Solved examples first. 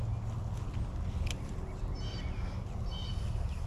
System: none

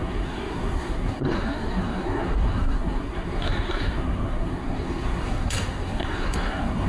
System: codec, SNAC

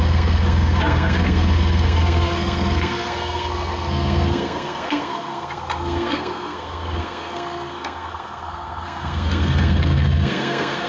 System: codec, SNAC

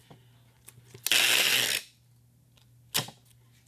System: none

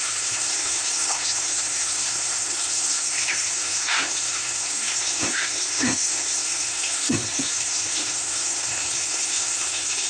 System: codec, SNAC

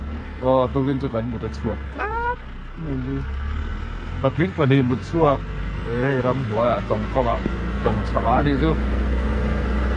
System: codec, SNAC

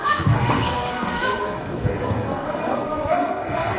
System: codec, SNAC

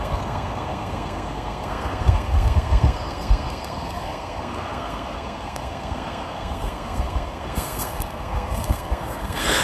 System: codec, SNAC